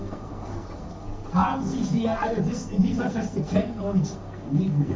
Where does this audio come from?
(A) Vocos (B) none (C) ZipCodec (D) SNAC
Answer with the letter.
D